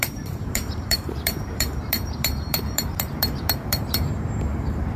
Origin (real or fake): fake